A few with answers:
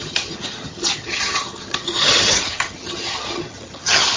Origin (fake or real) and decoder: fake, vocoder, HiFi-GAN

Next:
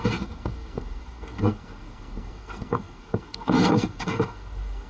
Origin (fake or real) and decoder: fake, codec, SNAC